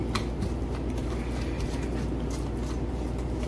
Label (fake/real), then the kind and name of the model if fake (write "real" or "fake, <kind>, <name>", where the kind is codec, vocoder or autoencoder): real